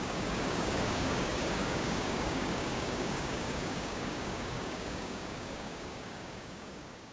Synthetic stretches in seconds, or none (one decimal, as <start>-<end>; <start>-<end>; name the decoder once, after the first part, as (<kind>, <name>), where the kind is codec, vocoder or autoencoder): 0.0-7.1 (codec, DAC)